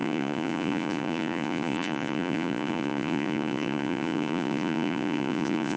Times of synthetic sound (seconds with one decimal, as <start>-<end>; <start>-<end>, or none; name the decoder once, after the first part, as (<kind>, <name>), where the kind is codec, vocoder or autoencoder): 0.0-5.8 (vocoder, Vocos)